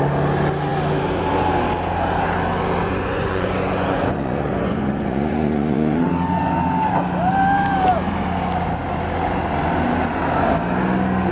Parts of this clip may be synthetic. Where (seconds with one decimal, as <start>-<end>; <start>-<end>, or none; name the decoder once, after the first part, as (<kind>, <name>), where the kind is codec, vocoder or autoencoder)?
2.8-6.1 (vocoder, Vocos)